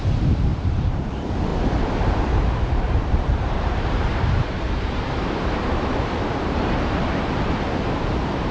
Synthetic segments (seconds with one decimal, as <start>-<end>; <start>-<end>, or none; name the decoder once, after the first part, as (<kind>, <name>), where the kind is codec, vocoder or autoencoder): 0.0-1.5 (vocoder, BigVGAN v2); 2.8-8.5